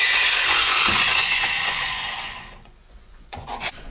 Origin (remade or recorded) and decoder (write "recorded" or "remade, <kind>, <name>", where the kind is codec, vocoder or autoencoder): remade, vocoder, Vocos